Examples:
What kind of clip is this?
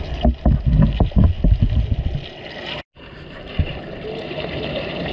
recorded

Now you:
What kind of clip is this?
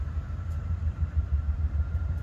remade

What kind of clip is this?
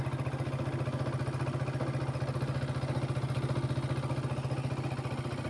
recorded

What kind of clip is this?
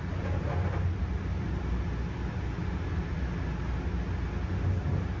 recorded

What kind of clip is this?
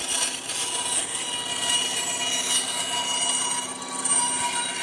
recorded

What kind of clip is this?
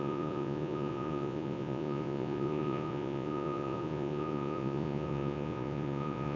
remade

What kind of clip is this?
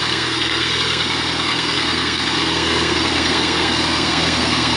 remade